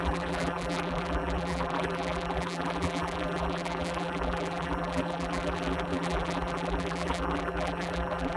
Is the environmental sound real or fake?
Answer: fake